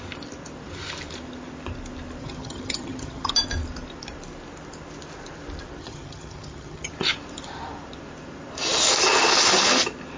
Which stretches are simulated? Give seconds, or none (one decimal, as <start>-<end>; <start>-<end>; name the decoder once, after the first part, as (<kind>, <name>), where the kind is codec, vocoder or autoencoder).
2.2-3.3 (vocoder, HiFi-GAN); 5.8-6.9